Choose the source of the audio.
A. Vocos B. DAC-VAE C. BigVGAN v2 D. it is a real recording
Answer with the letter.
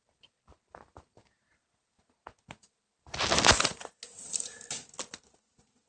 D